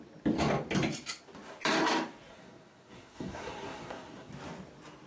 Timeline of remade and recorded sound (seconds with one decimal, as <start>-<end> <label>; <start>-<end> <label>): 0.0-2.3 recorded; 2.3-4.3 remade; 4.3-5.1 recorded